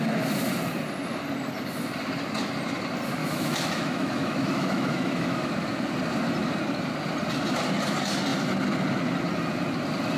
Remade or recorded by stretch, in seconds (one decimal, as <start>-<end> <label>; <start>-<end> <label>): 0.0-3.2 recorded; 3.2-5.5 remade; 5.5-10.2 recorded